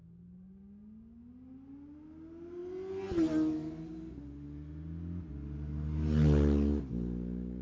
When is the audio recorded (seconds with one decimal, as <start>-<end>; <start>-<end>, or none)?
0.0-7.6